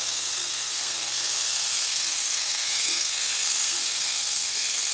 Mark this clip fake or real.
fake